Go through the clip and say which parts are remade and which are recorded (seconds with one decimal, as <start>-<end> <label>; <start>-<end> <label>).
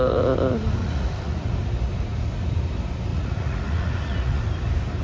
0.0-0.8 recorded; 0.8-1.5 remade; 1.5-3.1 recorded; 3.1-4.4 remade; 4.4-5.0 recorded